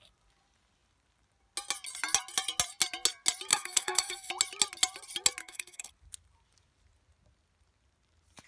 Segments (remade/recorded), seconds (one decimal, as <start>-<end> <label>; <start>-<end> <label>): 0.0-3.5 recorded; 3.5-4.3 remade; 4.3-5.4 recorded; 5.4-5.9 remade; 5.9-8.5 recorded